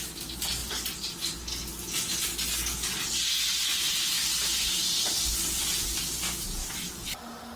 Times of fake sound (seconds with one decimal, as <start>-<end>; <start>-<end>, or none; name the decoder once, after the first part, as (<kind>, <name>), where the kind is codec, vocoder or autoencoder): 0.6-1.5 (vocoder, BigVGAN v2); 6.6-7.6